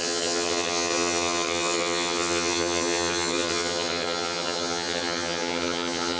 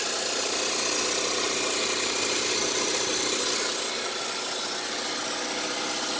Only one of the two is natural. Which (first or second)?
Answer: second